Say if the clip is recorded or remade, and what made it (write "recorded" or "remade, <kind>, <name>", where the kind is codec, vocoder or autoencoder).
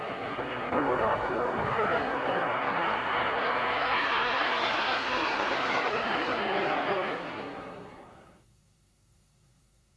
remade, codec, SNAC